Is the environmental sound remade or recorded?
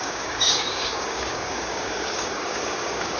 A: remade